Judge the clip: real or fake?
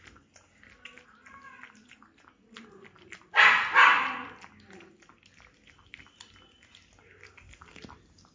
real